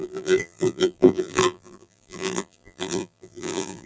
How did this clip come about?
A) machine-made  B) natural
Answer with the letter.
A